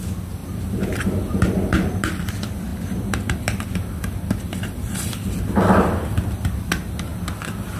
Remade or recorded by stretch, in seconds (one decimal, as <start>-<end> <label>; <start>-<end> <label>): 0.0-0.4 recorded; 0.4-2.1 remade; 2.1-2.7 recorded; 2.7-6.5 remade; 6.5-7.8 recorded